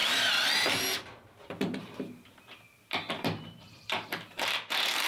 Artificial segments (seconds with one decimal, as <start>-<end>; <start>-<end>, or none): 2.9-5.1